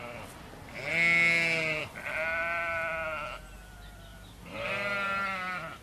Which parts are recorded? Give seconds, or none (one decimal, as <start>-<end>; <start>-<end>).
0.0-5.8